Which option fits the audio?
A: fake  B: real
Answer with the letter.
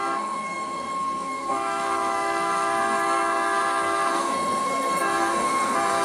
A